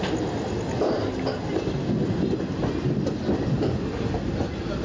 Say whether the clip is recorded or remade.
recorded